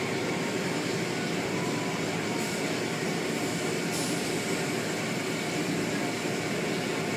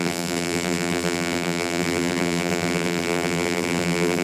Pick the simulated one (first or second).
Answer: second